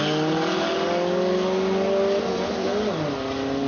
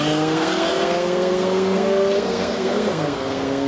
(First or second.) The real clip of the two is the first